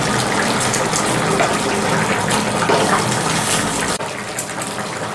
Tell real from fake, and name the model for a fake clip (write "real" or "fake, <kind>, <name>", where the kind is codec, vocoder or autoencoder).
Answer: real